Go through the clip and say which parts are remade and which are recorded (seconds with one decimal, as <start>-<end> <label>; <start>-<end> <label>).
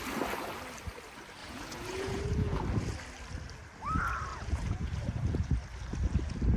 0.0-1.4 recorded; 1.4-2.6 remade; 2.6-4.3 recorded; 4.3-5.6 remade; 5.6-6.6 recorded